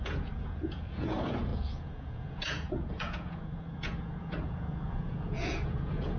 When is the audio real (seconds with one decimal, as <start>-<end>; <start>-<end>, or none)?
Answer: none